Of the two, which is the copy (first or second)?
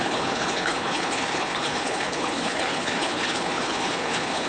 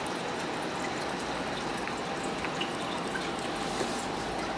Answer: first